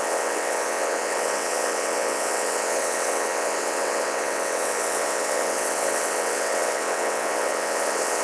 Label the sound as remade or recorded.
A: remade